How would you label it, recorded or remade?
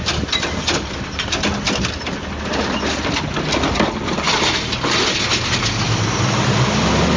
recorded